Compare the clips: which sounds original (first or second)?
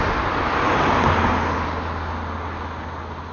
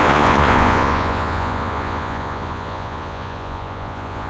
first